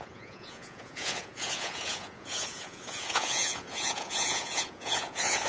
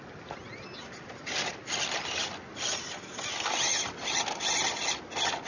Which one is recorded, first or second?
second